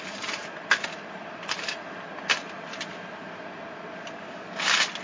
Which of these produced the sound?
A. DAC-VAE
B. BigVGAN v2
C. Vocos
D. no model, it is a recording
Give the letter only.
D